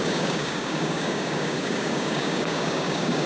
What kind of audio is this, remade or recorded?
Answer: remade